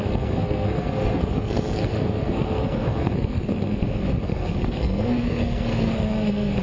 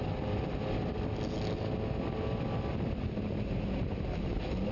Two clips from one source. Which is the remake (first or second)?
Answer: first